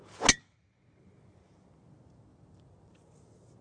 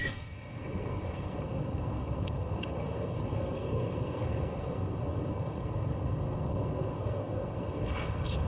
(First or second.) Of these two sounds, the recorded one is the first